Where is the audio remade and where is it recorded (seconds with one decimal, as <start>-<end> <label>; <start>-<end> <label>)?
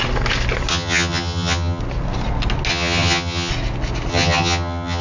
0.0-0.7 recorded; 0.7-1.8 remade; 1.8-2.7 recorded; 2.7-3.5 remade; 3.5-4.1 recorded; 4.1-5.0 remade